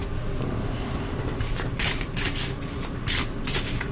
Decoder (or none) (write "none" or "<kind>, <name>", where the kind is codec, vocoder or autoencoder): none